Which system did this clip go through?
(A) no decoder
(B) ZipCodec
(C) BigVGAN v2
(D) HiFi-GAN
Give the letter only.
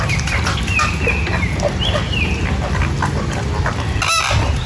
A